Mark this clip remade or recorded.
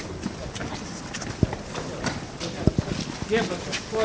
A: recorded